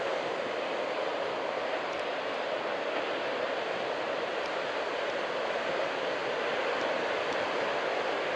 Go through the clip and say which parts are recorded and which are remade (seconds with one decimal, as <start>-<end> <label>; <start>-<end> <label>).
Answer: 0.0-8.4 recorded

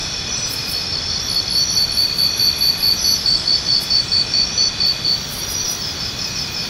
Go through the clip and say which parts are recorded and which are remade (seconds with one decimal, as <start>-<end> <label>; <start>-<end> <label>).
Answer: 0.0-6.7 recorded

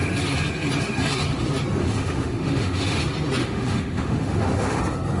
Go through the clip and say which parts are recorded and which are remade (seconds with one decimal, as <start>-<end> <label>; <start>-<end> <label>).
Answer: 0.0-1.8 recorded; 1.8-3.0 remade; 3.0-3.4 recorded; 3.4-4.8 remade; 4.8-5.2 recorded